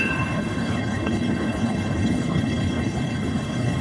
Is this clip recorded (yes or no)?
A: no